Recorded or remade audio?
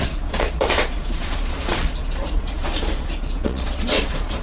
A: remade